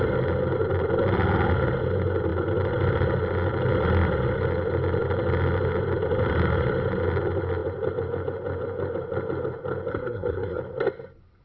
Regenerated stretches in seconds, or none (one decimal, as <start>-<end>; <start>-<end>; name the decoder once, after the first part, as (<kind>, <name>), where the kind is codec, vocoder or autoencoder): 9.9-10.6 (codec, SNAC)